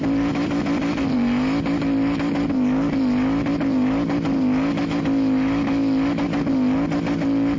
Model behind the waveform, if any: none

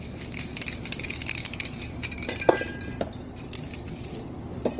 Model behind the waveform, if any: none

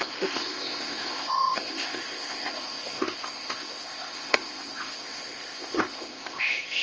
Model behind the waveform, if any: codec, ZipCodec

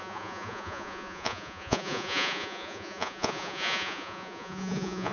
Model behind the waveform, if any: vocoder, Vocos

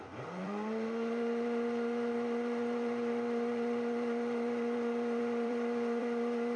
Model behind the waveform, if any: vocoder, BigVGAN v2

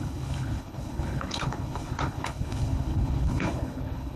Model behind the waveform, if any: codec, HILCodec